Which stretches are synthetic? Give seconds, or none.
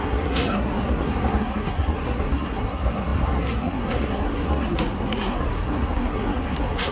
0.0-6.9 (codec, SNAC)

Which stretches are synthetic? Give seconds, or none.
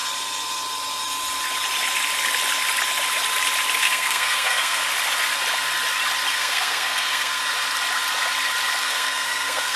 3.8-4.8 (codec, SNAC); 6.3-7.4; 8.8-9.8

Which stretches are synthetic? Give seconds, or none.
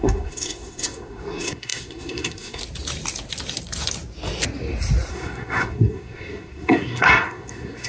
0.0-2.6 (codec, SNAC); 5.1-7.9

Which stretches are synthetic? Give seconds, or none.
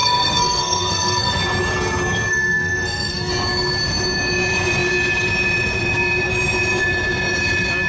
0.0-1.4 (codec, SNAC); 2.3-3.3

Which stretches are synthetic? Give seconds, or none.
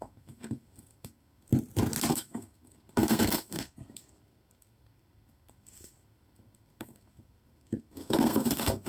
0.0-1.5 (codec, SNAC); 2.1-8.9